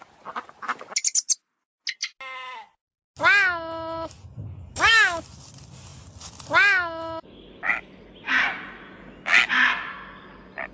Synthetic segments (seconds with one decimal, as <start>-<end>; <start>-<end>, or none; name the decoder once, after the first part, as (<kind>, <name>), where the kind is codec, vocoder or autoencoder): 4.7-5.2 (codec, DAC)